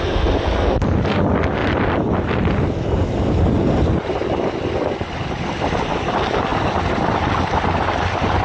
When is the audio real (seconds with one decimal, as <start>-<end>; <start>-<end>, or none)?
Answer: 1.6-5.9; 6.5-7.4